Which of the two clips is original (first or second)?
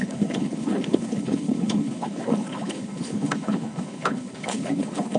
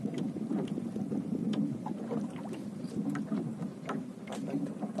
second